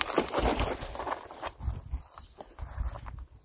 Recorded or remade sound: recorded